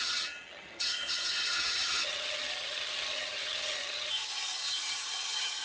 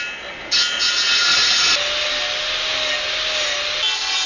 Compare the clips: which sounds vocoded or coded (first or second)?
first